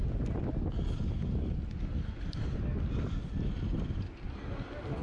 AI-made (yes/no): no